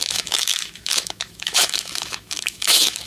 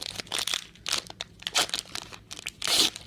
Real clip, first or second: second